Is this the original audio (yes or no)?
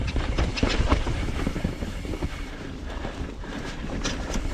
no